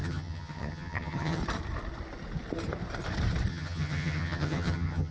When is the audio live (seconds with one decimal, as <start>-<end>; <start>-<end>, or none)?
1.4-3.5